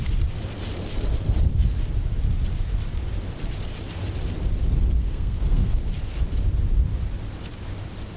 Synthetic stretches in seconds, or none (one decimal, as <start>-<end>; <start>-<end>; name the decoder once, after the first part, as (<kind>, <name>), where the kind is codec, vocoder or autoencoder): 5.0-5.8 (codec, SNAC)